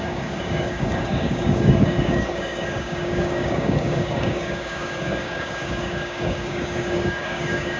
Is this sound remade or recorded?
remade